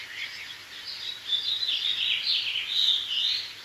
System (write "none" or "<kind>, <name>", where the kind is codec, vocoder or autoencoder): none